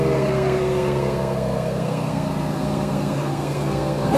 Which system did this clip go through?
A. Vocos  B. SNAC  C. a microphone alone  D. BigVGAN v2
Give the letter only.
B